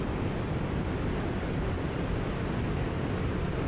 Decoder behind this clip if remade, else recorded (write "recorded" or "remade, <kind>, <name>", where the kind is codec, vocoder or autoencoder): recorded